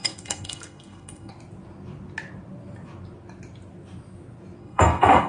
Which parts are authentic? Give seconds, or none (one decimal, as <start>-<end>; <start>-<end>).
1.3-4.6